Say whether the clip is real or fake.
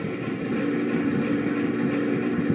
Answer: real